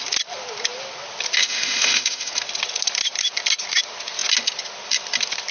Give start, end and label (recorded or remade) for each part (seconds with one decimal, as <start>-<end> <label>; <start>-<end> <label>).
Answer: 0.0-1.4 recorded; 1.4-2.3 remade; 2.3-5.5 recorded